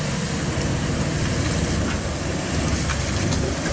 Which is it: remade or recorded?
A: recorded